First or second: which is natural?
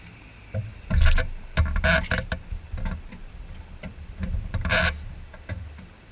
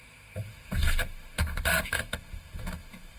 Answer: first